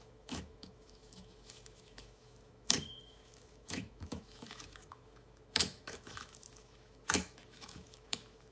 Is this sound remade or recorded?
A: remade